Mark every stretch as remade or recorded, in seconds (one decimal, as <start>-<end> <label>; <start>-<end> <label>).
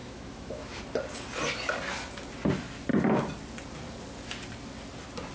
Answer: 0.0-0.8 remade; 0.8-5.3 recorded